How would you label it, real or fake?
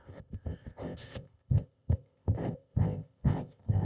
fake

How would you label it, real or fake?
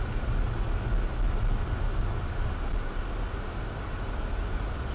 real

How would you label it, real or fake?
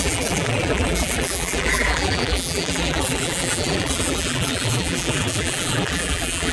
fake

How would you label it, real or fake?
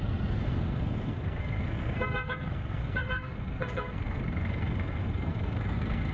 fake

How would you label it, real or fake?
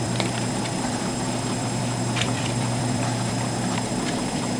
fake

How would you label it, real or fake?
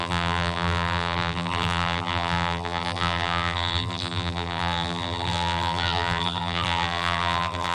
fake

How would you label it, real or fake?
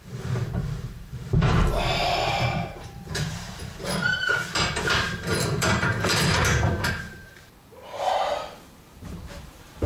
fake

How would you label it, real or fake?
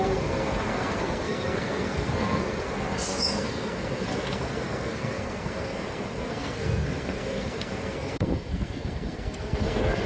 fake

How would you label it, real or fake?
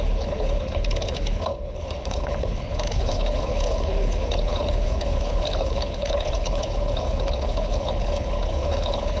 fake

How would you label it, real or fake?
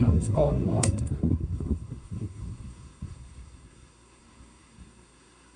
fake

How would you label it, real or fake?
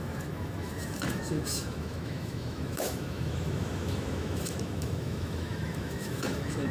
fake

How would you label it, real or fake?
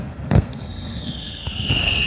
fake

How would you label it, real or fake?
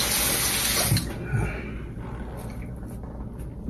real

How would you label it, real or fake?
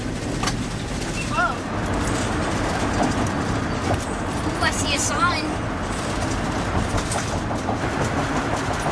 real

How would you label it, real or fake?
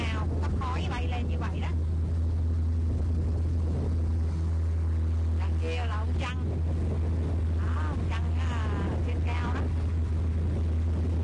real